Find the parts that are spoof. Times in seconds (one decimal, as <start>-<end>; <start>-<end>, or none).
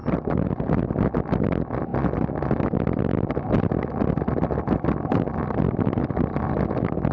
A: 0.0-0.7